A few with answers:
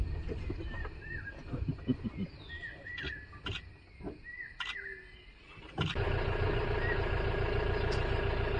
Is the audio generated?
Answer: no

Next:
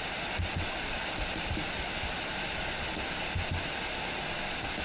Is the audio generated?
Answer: no